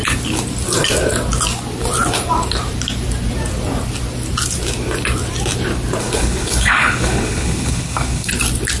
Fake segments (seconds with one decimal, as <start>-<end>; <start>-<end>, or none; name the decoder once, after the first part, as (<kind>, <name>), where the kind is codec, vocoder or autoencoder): 6.0-8.3 (codec, HILCodec)